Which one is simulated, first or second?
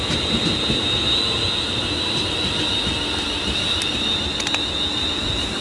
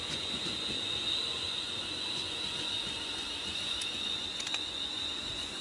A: second